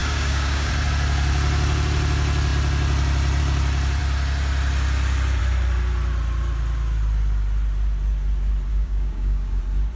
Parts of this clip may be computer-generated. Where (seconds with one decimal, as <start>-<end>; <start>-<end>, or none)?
0.0-0.7; 8.7-9.6